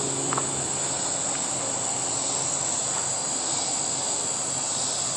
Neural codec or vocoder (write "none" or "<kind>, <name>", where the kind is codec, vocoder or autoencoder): none